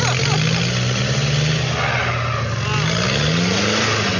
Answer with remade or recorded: recorded